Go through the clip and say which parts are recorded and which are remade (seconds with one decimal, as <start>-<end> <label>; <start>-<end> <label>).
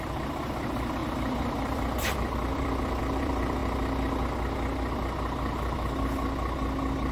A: 0.0-3.6 remade; 3.6-7.1 recorded